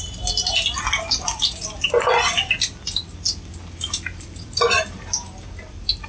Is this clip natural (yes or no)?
yes